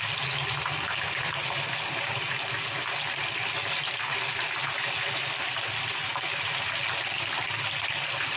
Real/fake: real